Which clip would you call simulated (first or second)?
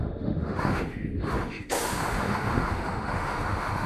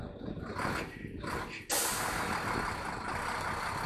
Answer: first